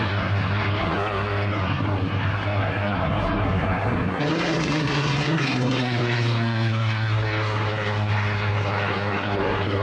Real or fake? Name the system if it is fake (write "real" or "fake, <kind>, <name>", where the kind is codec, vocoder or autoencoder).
fake, codec, SNAC